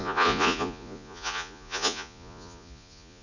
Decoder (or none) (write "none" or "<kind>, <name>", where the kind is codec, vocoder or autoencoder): vocoder, Vocos